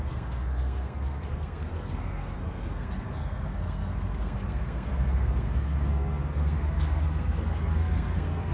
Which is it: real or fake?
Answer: fake